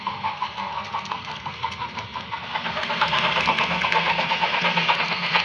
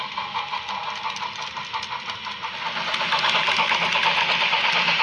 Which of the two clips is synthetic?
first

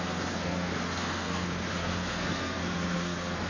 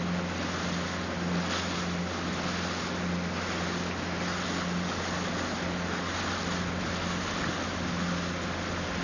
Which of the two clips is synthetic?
first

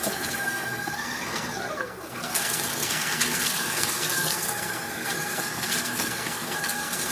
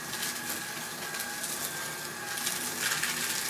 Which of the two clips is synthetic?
first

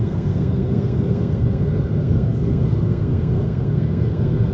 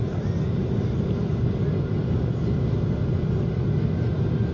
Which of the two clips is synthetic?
first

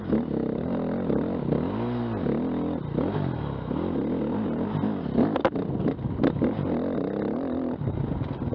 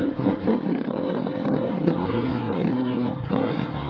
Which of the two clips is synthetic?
second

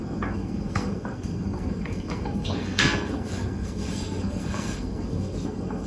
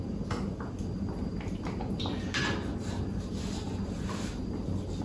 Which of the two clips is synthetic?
first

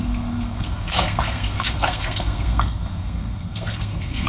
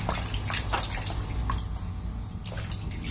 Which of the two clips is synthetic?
first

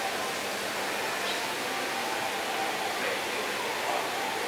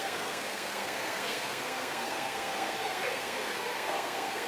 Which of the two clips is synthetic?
second